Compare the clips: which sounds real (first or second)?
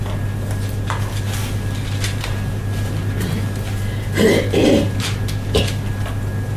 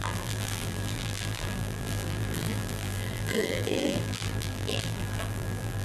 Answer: first